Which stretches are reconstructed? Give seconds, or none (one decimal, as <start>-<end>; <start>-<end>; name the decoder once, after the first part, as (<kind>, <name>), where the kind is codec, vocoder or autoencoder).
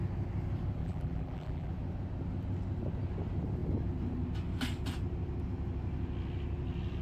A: 0.8-1.7 (vocoder, BigVGAN v2)